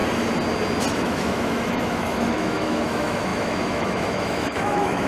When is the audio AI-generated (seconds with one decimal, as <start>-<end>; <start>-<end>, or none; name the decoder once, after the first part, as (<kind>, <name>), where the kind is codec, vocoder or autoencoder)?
0.9-5.1 (autoencoder, DAC-VAE)